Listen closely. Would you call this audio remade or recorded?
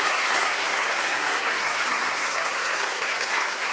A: remade